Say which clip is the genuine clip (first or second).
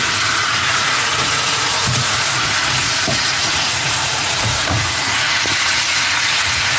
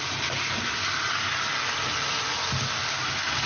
second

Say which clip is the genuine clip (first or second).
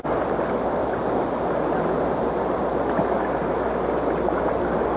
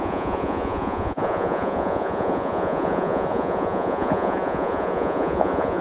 first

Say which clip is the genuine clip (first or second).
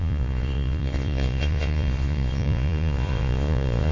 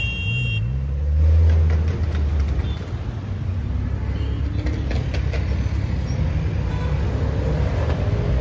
second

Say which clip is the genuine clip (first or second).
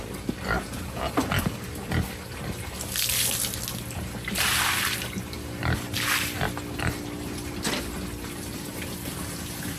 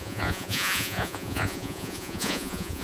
first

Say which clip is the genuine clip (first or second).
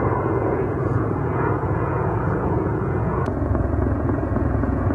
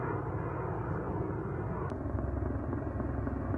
second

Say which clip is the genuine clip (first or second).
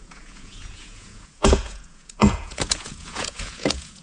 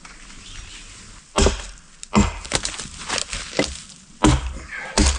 second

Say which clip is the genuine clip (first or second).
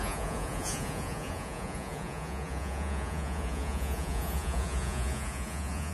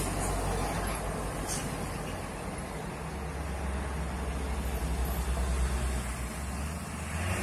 second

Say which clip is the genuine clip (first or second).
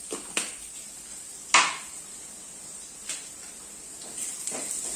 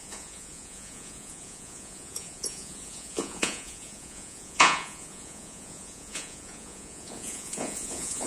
first